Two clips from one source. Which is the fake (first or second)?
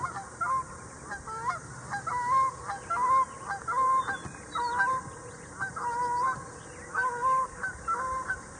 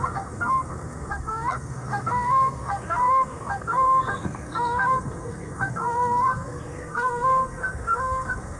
second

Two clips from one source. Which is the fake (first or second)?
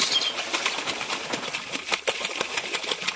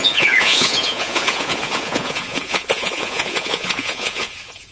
second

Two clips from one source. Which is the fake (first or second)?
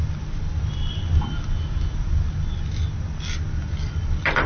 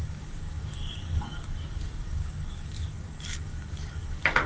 second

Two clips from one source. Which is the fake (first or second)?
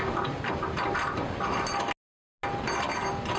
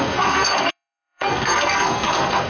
second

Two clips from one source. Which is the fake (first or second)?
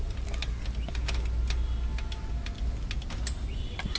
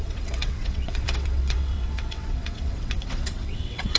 second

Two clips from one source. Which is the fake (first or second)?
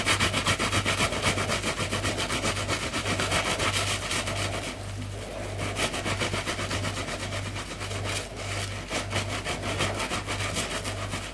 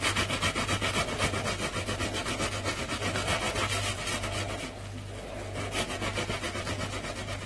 first